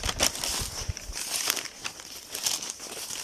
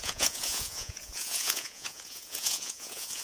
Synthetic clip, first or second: second